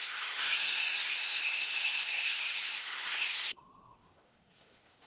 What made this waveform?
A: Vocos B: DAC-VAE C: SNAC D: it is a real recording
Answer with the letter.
C